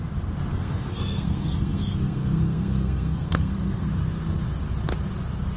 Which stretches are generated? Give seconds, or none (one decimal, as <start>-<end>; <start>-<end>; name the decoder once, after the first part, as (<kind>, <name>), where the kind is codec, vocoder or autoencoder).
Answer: 0.5-3.9 (codec, SNAC)